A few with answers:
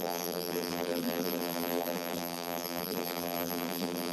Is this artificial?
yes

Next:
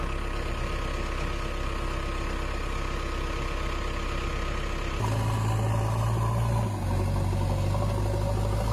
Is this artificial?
no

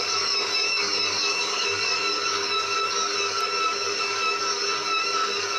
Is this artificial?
yes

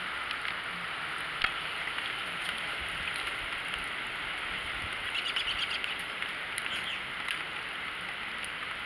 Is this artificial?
no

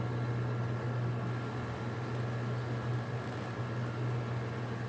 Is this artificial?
no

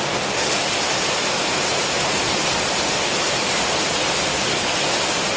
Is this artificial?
no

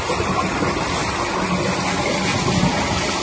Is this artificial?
no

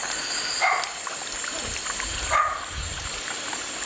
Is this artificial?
no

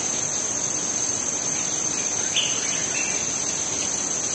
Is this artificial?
no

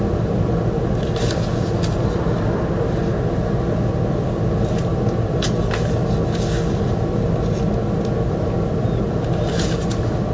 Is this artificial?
no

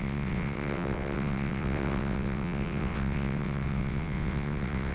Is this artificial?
yes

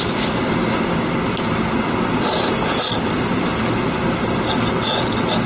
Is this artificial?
no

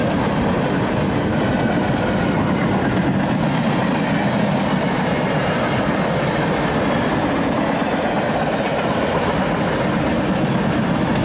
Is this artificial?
no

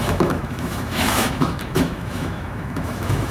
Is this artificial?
yes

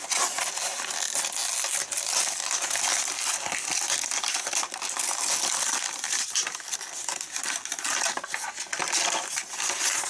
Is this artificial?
no